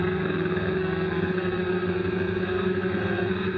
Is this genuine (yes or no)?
no